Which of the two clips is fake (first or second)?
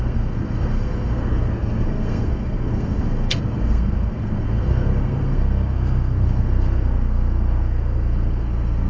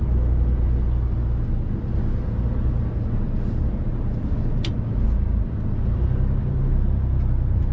first